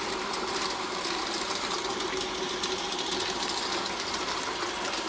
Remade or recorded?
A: recorded